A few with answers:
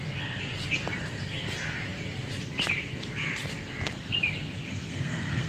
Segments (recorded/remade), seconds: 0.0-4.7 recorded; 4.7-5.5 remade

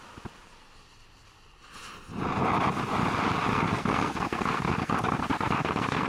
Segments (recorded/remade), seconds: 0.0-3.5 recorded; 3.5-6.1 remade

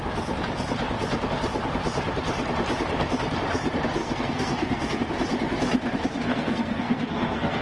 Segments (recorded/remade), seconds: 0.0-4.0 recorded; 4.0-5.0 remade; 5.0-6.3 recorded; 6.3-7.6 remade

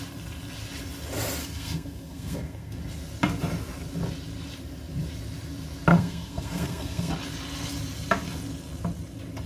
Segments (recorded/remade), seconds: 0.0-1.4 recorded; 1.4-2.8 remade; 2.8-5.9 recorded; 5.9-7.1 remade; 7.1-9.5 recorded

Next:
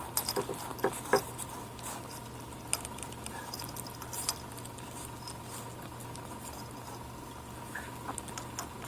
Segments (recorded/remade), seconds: 0.0-8.9 recorded

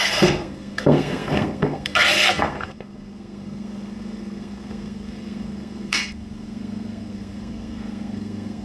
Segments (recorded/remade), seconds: 0.0-8.6 remade

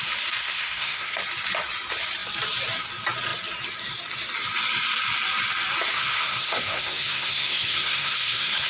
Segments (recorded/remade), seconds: 0.0-0.4 recorded; 0.4-1.2 remade; 1.2-5.9 recorded; 5.9-8.7 remade